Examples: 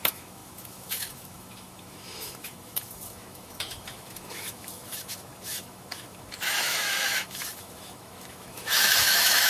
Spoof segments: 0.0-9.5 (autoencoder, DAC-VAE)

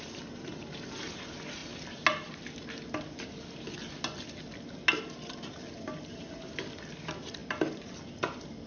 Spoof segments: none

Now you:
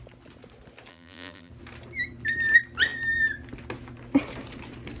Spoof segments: 0.9-1.5 (vocoder, BigVGAN v2)

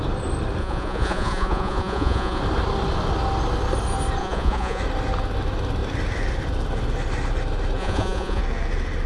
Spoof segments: 0.6-2.4 (vocoder, Vocos); 4.2-4.8; 7.8-8.4